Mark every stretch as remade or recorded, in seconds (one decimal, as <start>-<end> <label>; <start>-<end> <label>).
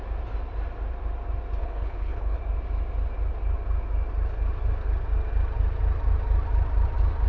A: 0.0-1.6 recorded; 1.6-2.4 remade; 2.4-7.3 recorded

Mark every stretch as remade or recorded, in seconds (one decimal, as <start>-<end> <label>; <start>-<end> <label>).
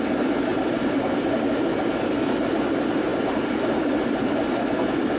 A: 0.0-0.5 recorded; 0.5-1.3 remade; 1.3-5.2 recorded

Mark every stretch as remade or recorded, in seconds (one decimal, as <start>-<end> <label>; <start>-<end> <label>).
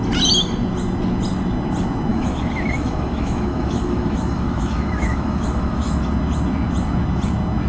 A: 0.0-2.1 recorded; 2.1-6.0 remade; 6.0-7.7 recorded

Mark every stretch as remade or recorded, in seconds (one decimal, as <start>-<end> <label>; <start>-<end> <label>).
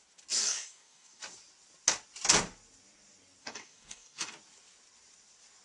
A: 0.0-0.4 recorded; 0.4-1.2 remade; 1.2-3.4 recorded; 3.4-4.3 remade; 4.3-5.6 recorded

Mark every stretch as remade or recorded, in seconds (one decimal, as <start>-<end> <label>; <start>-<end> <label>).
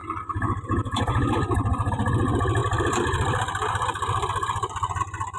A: 0.0-2.6 recorded; 2.6-5.0 remade; 5.0-5.4 recorded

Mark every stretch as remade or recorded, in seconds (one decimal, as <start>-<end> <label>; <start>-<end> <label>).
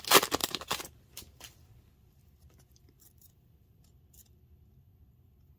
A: 0.0-0.4 recorded; 0.4-3.8 remade; 3.8-5.6 recorded